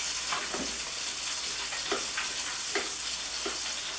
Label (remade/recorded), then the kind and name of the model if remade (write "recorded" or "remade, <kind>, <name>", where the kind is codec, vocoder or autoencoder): recorded